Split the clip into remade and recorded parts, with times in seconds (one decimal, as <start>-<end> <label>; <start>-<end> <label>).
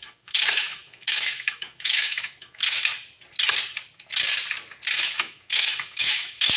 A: 0.0-2.9 remade; 2.9-5.0 recorded; 5.0-6.6 remade